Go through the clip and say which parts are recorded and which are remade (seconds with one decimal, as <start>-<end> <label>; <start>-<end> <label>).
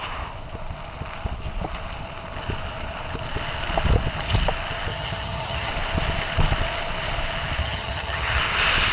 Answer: 0.0-4.9 recorded; 4.9-5.7 remade; 5.7-7.6 recorded; 7.6-8.4 remade; 8.4-8.9 recorded